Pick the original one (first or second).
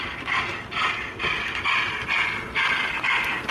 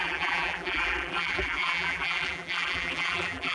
first